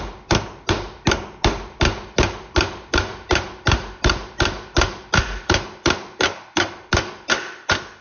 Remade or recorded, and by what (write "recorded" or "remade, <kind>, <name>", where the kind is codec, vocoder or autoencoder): recorded